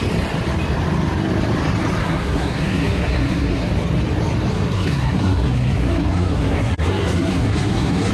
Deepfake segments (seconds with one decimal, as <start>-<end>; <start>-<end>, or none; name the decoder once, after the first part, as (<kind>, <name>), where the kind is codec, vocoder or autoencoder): 2.0-3.7 (codec, SNAC); 4.5-8.1